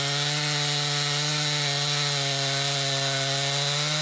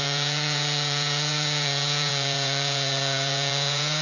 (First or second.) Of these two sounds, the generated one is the second